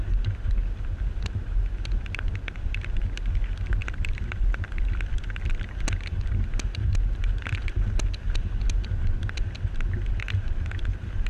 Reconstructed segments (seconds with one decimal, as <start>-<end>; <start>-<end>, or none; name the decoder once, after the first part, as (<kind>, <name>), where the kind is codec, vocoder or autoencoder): 3.8-5.4 (vocoder, BigVGAN v2)